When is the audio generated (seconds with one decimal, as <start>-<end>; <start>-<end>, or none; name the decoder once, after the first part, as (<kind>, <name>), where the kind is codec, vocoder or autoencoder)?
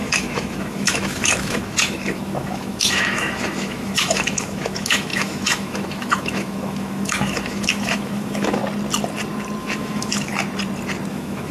0.0-8.6 (autoencoder, DAC-VAE); 9.6-10.3; 11.1-11.5